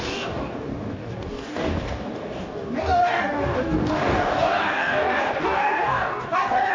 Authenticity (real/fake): fake